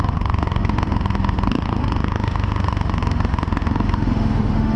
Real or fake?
fake